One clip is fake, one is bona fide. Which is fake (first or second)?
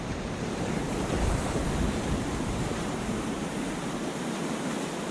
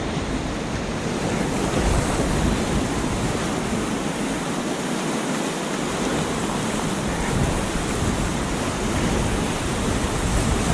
first